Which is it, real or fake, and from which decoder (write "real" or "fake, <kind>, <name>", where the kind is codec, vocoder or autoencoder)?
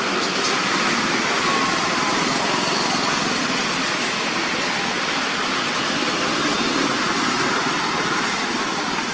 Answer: real